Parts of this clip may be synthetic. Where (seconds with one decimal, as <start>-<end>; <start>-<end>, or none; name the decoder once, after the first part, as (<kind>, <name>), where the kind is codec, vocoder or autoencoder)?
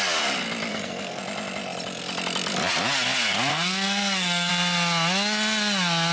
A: 0.7-1.2 (codec, SNAC); 3.5-4.5